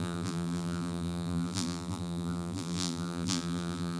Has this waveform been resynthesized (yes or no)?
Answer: yes